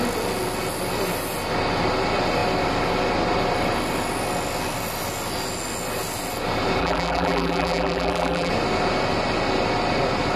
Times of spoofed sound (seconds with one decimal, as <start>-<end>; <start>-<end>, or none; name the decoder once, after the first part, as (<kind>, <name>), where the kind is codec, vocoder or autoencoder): 6.8-8.5 (vocoder, BigVGAN v2)